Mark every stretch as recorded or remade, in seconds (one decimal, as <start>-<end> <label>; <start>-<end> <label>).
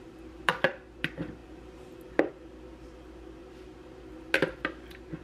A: 0.0-3.4 remade; 3.4-5.2 recorded